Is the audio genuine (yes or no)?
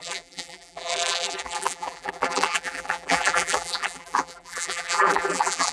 no